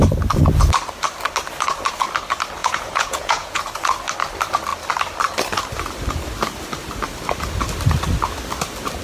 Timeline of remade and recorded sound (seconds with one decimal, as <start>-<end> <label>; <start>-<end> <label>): 0.0-2.6 recorded; 2.6-3.6 remade; 3.6-9.0 recorded